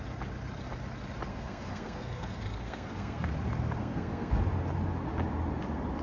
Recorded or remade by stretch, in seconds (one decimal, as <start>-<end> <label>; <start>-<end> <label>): 0.0-1.3 recorded; 1.3-3.3 remade; 3.3-3.8 recorded; 3.8-4.3 remade; 4.3-6.0 recorded